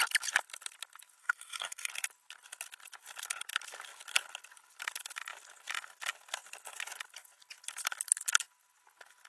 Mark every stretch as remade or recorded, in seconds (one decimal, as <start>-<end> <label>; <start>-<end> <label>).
0.0-1.2 recorded; 1.2-1.9 remade; 1.9-9.3 recorded